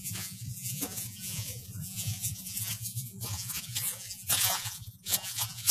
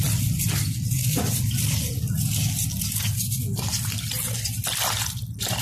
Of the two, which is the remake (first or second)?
first